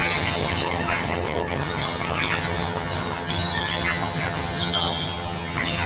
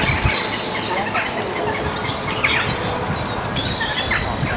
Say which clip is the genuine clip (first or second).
second